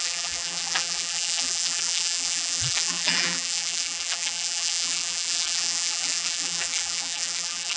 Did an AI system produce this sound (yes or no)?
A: yes